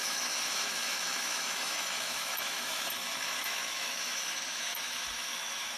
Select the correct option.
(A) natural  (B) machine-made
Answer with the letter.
B